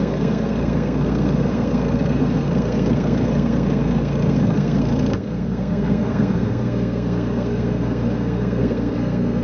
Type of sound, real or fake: fake